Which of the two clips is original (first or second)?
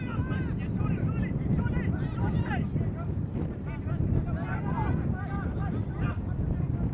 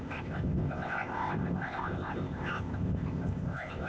first